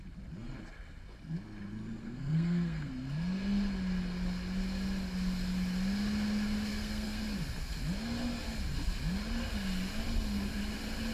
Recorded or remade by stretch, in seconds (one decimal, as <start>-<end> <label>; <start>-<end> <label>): 0.0-2.0 recorded; 2.0-2.9 remade; 2.9-6.7 recorded; 6.7-7.2 remade; 7.2-11.1 recorded